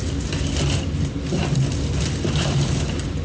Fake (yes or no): no